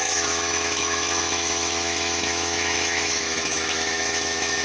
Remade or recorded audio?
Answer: remade